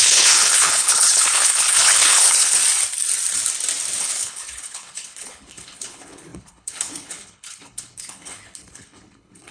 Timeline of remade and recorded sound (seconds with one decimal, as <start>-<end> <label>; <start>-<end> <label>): 0.0-2.6 remade; 2.6-4.0 recorded; 4.0-9.5 remade